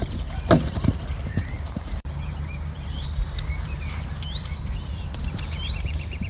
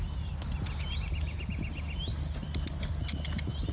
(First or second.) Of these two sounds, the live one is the second